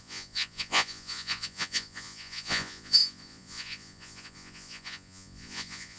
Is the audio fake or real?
fake